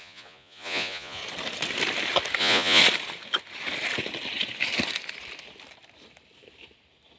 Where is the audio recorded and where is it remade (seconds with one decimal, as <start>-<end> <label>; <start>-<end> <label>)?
0.0-1.2 remade; 1.2-2.4 recorded; 2.4-2.8 remade; 2.8-7.2 recorded